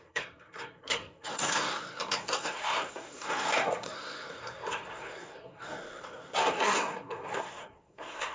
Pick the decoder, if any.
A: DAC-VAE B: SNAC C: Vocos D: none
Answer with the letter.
B